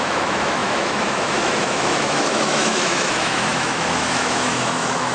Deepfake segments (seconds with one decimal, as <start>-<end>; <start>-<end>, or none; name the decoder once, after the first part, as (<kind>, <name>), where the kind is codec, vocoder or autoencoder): 0.0-5.1 (autoencoder, DAC-VAE)